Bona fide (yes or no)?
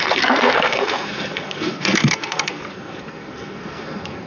no